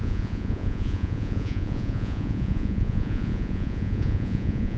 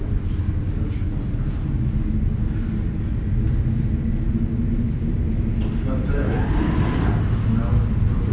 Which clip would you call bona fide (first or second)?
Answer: second